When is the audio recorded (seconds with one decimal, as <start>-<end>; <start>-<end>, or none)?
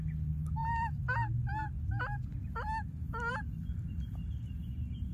0.0-5.1